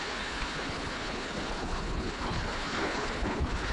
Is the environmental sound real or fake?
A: fake